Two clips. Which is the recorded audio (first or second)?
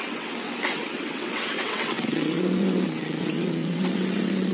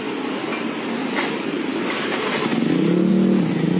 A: second